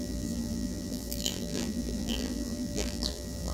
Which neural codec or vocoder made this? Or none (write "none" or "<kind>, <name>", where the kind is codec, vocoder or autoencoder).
vocoder, BigVGAN v2